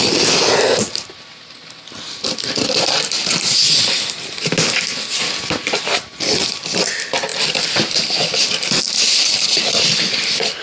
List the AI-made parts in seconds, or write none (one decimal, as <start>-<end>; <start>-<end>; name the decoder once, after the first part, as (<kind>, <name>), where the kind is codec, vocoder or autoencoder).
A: none